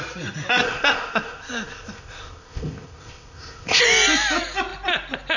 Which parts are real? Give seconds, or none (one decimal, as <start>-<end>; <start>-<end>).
0.0-0.6; 3.8-5.4